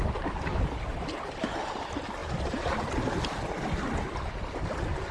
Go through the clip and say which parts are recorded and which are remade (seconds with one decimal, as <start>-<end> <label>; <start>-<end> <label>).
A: 0.0-5.1 recorded